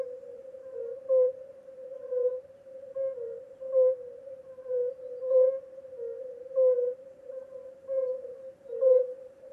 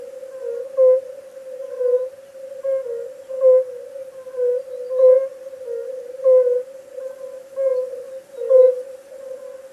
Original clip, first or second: second